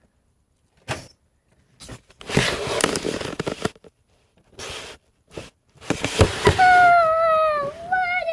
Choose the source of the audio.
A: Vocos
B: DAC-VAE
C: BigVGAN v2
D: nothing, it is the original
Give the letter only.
D